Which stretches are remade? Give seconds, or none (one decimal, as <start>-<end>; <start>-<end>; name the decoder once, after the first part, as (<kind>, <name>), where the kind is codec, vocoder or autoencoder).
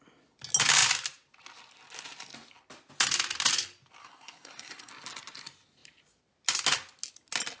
4.0-4.9 (codec, SNAC)